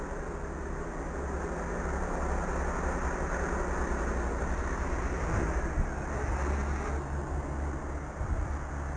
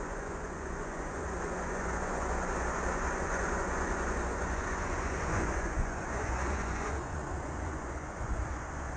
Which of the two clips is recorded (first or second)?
first